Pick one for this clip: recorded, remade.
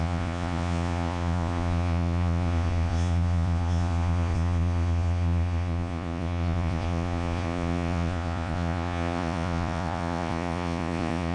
remade